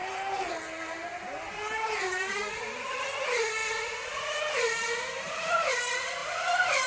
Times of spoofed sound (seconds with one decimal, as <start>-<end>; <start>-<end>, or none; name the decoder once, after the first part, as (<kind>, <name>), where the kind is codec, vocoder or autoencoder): 0.0-0.5 (vocoder, BigVGAN v2); 1.0-2.3; 3.6-5.7; 6.2-6.9